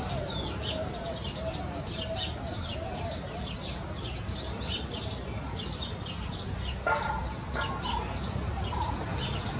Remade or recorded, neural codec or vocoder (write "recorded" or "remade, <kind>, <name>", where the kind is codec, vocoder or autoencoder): recorded